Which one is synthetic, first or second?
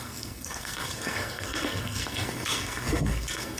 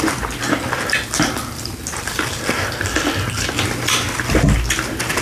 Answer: first